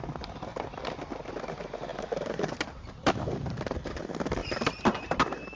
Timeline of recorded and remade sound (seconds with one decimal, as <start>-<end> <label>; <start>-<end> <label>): 0.0-1.9 recorded; 1.9-4.0 remade; 4.0-4.4 recorded; 4.4-5.0 remade; 5.0-5.5 recorded